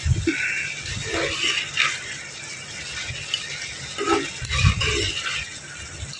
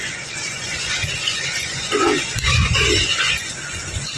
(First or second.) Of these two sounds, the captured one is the first